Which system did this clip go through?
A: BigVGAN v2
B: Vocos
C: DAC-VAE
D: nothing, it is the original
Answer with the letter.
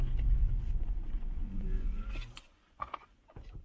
B